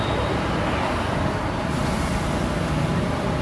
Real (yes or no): yes